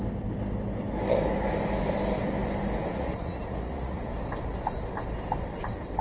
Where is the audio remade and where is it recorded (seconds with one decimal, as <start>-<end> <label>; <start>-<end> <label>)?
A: 0.0-2.9 recorded; 2.9-4.0 remade; 4.0-6.0 recorded

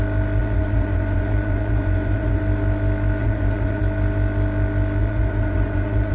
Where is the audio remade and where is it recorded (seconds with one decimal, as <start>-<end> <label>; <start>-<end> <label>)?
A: 0.0-0.4 recorded; 0.4-2.4 remade; 2.4-3.2 recorded; 3.2-3.8 remade; 3.8-5.0 recorded; 5.0-6.1 remade

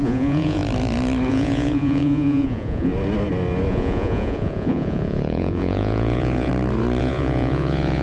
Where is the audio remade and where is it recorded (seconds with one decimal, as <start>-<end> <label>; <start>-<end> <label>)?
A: 0.0-0.6 remade; 0.6-1.3 recorded; 1.3-2.9 remade; 2.9-3.7 recorded; 3.7-6.5 remade; 6.5-7.0 recorded; 7.0-8.0 remade

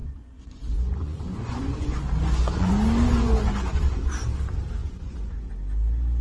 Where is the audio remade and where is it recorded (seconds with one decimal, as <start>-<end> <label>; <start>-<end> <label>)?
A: 0.0-2.7 remade; 2.7-3.1 recorded; 3.1-3.8 remade; 3.8-4.8 recorded; 4.8-5.5 remade; 5.5-6.2 recorded

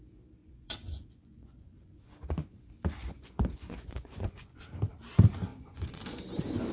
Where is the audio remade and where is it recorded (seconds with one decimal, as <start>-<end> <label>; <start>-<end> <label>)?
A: 0.0-0.4 recorded; 0.4-2.6 remade; 2.6-3.0 recorded; 3.0-4.6 remade; 4.6-5.5 recorded; 5.5-6.0 remade; 6.0-6.7 recorded

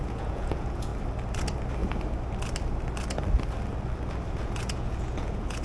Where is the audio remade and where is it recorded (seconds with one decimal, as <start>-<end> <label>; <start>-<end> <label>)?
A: 0.0-0.9 remade; 0.9-4.3 recorded; 4.3-5.6 remade